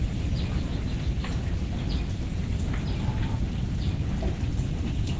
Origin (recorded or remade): recorded